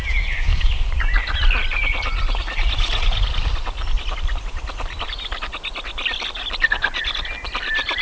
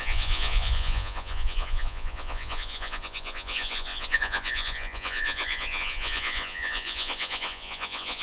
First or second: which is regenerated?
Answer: second